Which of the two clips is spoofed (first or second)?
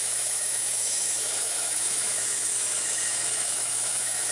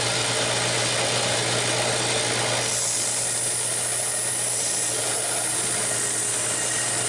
first